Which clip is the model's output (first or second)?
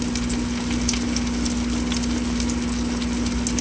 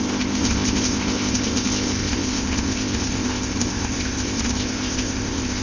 second